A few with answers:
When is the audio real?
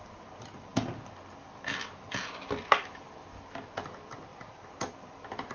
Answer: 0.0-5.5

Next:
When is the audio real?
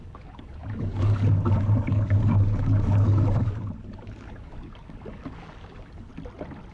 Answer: 6.1-6.7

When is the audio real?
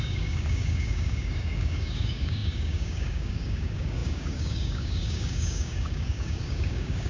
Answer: none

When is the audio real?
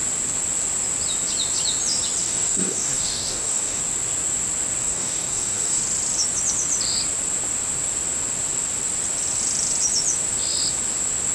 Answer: 0.0-2.2; 3.8-4.8; 5.8-11.3